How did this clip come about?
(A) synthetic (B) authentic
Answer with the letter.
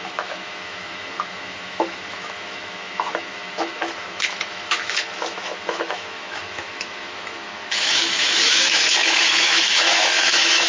A